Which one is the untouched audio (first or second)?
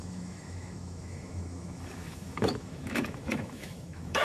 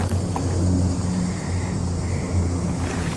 second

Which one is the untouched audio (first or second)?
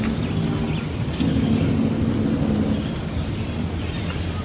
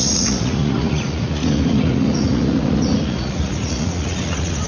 first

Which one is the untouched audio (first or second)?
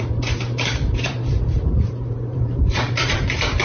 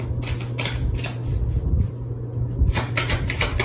second